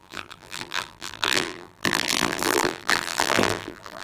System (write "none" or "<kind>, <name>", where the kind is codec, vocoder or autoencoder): vocoder, BigVGAN v2